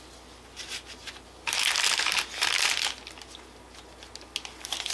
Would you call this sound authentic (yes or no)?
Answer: yes